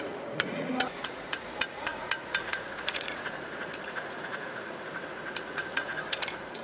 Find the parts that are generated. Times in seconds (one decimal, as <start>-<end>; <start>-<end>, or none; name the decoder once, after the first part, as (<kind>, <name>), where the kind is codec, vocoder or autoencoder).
0.0-6.6 (vocoder, Vocos)